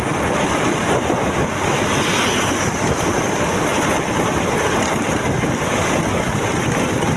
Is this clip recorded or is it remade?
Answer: recorded